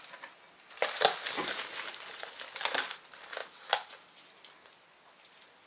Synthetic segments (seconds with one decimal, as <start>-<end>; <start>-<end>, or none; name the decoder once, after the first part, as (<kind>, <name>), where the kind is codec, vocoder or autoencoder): none

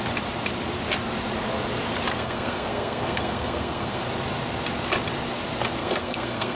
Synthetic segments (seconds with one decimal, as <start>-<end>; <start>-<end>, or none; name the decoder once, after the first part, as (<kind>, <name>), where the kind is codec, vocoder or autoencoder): 2.1-4.0 (codec, SNAC); 5.8-6.6

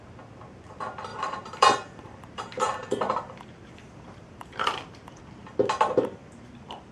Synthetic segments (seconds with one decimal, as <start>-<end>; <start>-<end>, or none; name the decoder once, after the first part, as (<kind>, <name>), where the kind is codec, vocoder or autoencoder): 1.1-5.2 (vocoder, BigVGAN v2); 6.2-6.9

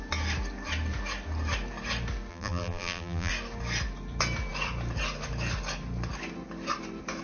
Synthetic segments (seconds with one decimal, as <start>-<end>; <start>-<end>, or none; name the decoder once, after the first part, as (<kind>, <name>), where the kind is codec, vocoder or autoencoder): 2.3-3.3 (vocoder, BigVGAN v2)

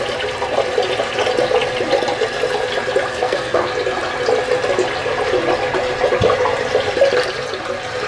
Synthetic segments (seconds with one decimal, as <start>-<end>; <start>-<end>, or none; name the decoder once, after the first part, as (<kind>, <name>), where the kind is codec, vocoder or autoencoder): 3.1-3.7 (codec, SNAC)

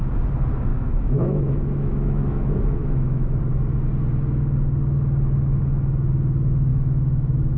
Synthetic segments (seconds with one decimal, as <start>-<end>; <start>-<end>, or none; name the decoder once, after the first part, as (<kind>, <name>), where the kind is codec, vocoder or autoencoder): 0.7-3.4 (autoencoder, DAC-VAE); 6.7-7.6

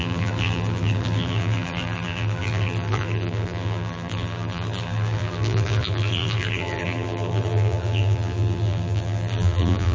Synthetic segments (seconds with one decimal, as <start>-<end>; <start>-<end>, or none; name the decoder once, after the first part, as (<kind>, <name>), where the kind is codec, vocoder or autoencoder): 0.0-9.9 (vocoder, BigVGAN v2)